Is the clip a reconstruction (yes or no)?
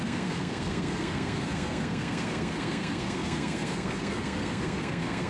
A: yes